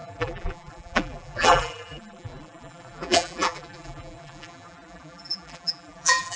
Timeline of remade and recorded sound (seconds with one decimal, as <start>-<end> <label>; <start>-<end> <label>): 0.0-6.4 remade